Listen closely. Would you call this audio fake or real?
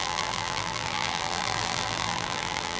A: fake